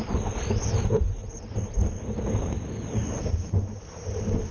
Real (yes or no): yes